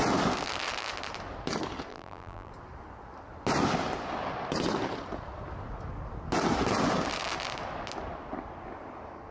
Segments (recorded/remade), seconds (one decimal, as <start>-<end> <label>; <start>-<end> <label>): 0.0-1.9 recorded; 1.9-2.5 remade; 2.5-9.3 recorded